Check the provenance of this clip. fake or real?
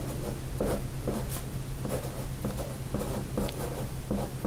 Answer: real